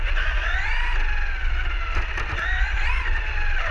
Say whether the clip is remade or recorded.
recorded